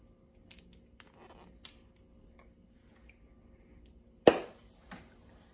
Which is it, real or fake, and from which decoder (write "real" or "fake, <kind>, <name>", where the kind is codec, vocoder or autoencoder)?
real